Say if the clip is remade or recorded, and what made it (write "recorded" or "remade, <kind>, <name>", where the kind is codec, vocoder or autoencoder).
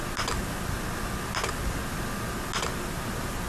recorded